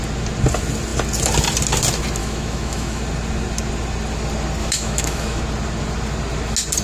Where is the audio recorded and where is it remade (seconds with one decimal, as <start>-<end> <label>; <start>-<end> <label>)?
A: 0.0-2.2 recorded; 2.2-3.0 remade; 3.0-4.6 recorded; 4.6-5.4 remade; 5.4-6.8 recorded